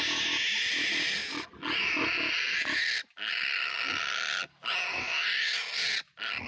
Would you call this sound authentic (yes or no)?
yes